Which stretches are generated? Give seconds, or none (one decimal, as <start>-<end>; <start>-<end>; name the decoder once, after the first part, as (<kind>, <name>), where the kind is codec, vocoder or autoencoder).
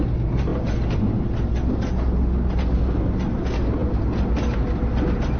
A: none